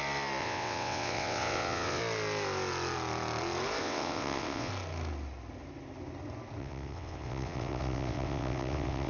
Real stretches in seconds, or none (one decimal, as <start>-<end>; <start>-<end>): 0.0-0.4; 2.0-3.8; 4.7-6.6